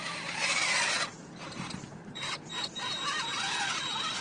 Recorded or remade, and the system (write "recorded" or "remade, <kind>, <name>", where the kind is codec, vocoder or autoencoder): remade, vocoder, BigVGAN v2